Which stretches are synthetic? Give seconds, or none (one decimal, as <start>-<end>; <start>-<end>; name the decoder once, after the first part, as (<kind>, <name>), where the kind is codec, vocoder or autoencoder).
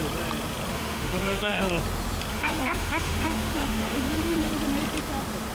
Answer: 0.7-1.6 (autoencoder, DAC-VAE); 2.3-4.5